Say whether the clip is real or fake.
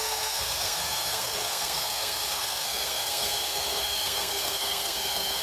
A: fake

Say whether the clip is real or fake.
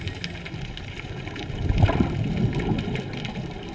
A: real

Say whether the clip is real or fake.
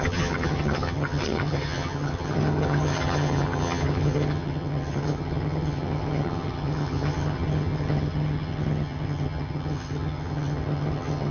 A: fake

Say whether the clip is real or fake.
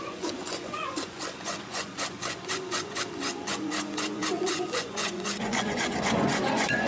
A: fake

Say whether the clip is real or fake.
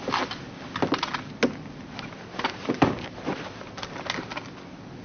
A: real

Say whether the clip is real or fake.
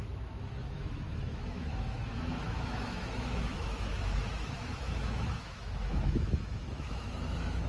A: fake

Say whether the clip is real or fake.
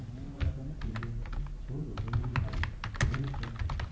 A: real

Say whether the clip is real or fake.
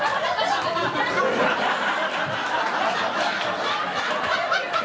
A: fake